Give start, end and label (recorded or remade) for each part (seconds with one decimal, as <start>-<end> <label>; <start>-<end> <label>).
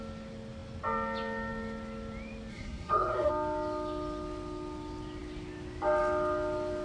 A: 0.0-2.5 recorded; 2.5-3.3 remade; 3.3-6.8 recorded